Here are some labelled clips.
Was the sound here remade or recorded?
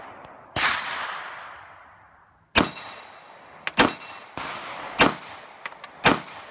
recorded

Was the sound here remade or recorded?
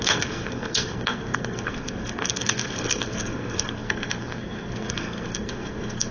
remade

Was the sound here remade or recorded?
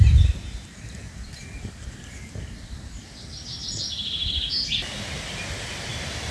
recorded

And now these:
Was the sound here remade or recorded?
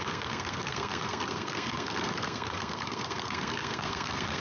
remade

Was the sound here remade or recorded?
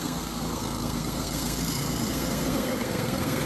remade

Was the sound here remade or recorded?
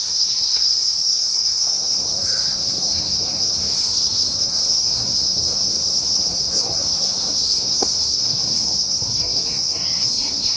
remade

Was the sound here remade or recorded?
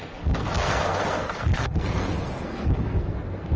remade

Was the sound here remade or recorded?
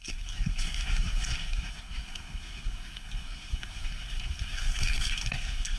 remade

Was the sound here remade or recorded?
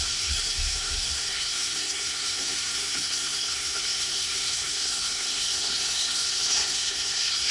remade